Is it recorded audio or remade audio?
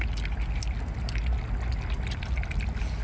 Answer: recorded